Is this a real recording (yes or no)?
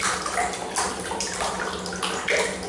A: yes